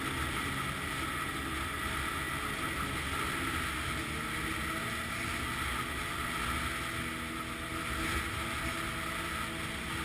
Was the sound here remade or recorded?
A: recorded